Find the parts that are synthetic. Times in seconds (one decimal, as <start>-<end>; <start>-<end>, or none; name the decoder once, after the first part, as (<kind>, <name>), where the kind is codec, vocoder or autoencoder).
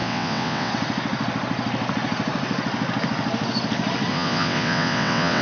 0.0-0.7 (vocoder, WaveNeXt); 4.1-5.4